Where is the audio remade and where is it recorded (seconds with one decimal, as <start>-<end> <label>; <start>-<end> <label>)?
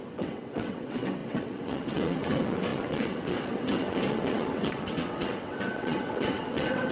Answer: 0.0-6.9 remade